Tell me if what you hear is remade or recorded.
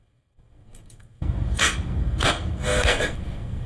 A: remade